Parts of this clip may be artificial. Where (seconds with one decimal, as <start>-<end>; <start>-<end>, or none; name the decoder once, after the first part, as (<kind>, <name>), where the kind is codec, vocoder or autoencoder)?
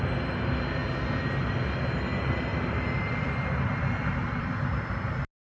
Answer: 2.5-4.9 (vocoder, BigVGAN v2)